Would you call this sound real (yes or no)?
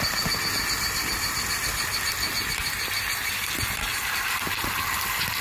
yes